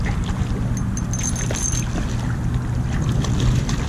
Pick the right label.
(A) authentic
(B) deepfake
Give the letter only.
A